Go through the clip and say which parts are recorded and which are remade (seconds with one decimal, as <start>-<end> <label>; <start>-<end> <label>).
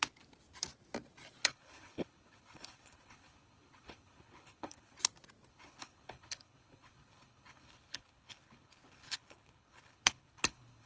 0.0-1.4 recorded; 1.4-5.0 remade; 5.0-5.5 recorded; 5.5-10.9 remade